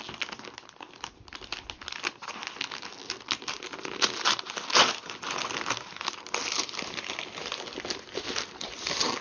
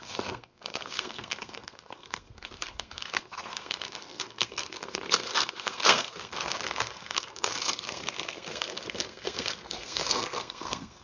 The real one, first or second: first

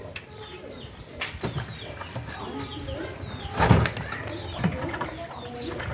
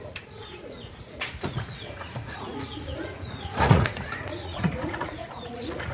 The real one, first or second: first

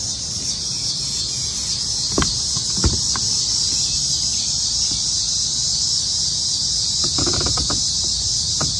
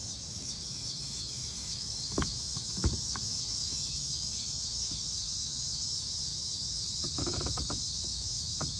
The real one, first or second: first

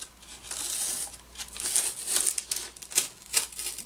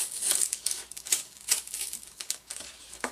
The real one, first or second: first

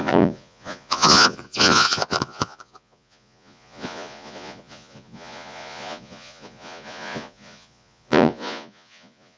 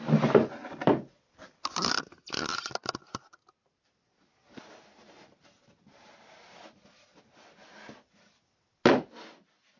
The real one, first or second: second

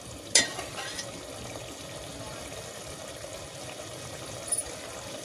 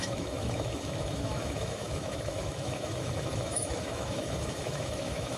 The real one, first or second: first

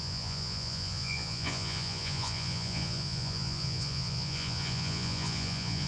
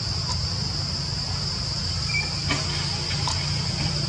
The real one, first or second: second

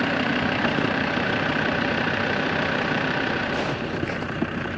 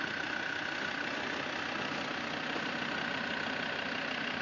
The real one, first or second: second